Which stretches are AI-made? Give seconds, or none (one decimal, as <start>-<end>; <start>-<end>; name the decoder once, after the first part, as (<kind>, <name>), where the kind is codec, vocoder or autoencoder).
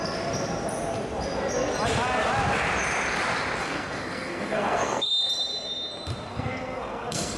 3.6-5.1 (codec, SNAC); 6.3-7.4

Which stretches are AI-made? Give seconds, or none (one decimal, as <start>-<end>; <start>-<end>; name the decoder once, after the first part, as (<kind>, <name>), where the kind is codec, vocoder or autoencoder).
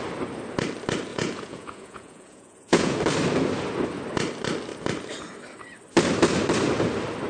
1.1-3.0 (vocoder, Vocos)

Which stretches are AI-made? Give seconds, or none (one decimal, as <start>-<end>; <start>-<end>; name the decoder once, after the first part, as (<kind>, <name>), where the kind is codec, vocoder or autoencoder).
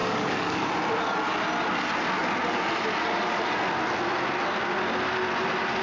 0.0-0.7 (codec, DAC)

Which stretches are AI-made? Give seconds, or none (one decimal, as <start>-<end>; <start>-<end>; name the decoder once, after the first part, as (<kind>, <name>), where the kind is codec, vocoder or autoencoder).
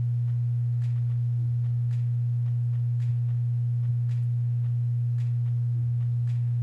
none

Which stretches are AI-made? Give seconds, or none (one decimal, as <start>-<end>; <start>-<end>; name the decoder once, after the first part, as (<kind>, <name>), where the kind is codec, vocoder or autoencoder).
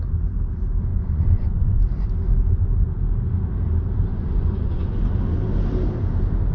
0.9-1.8 (vocoder, Vocos); 4.1-5.0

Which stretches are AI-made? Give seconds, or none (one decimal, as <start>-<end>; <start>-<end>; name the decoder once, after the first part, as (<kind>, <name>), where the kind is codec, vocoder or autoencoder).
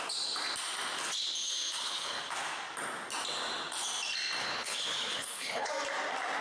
1.4-2.2 (codec, HILCodec); 4.4-5.7